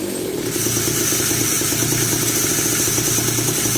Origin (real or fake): real